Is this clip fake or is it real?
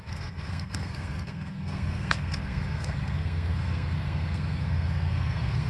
fake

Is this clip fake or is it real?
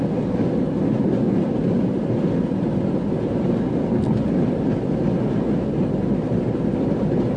real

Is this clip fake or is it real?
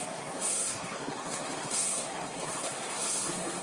fake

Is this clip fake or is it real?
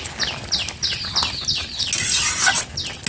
real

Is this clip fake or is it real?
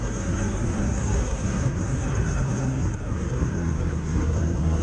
fake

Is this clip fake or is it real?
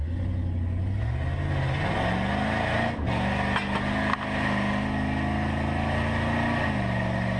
real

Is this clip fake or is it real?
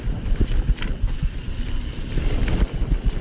real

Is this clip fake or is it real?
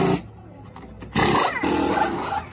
real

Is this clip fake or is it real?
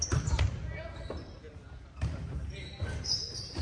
real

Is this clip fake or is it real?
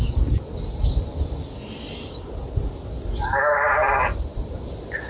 real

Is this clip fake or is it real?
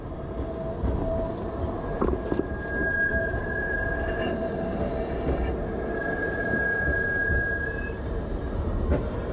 real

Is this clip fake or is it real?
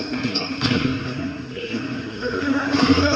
fake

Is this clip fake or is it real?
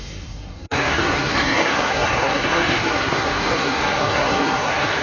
fake